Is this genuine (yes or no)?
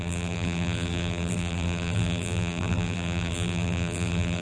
no